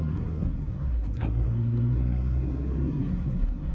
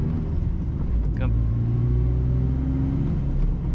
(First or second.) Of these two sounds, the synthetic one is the first